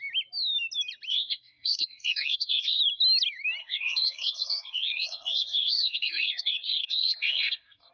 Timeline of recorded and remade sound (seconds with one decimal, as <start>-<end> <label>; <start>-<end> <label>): 0.0-1.1 recorded; 1.1-2.8 remade; 2.8-3.6 recorded; 3.6-7.9 remade